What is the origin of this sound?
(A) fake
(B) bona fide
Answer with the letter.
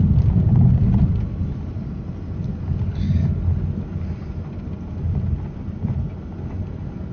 B